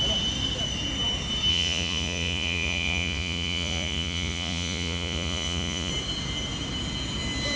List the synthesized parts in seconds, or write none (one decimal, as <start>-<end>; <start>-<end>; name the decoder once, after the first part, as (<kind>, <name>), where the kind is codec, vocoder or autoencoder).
1.5-5.9 (vocoder, Vocos)